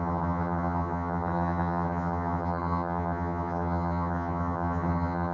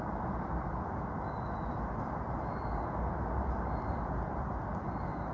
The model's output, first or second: first